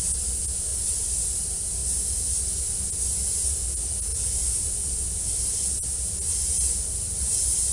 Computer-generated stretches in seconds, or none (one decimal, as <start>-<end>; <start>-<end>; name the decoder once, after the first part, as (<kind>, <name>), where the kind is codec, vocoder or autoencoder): none